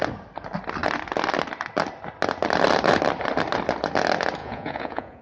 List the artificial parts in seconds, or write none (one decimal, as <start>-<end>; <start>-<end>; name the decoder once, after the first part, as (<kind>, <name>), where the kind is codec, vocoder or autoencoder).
4.4-5.2 (vocoder, Vocos)